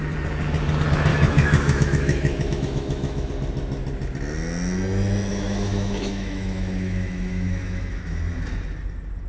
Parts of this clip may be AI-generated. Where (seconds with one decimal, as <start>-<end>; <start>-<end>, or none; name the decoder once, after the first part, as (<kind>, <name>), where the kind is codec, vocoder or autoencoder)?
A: 1.1-3.3 (autoencoder, DAC-VAE); 5.3-8.2

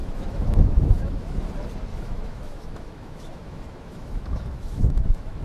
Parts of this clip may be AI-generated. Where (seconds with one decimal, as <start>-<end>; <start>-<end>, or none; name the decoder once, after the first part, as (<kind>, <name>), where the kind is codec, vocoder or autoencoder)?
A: 0.0-1.5 (autoencoder, DAC-VAE); 1.9-5.4

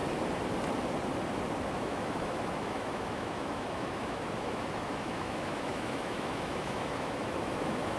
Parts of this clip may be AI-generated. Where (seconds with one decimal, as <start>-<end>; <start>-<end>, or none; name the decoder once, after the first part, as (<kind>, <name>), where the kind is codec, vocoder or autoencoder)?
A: 1.7-8.0 (autoencoder, DAC-VAE)

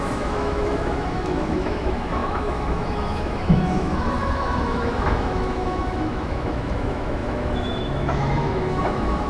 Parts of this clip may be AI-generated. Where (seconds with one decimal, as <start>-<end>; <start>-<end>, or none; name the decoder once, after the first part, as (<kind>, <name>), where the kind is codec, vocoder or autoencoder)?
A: 0.0-9.3 (autoencoder, DAC-VAE)